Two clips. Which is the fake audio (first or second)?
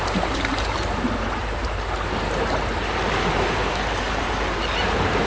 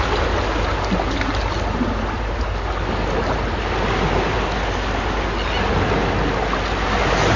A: first